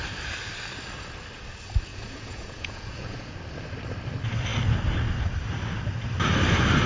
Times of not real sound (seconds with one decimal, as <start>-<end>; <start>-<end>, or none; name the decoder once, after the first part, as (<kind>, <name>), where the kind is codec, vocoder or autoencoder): 1.9-3.4 (vocoder, Vocos)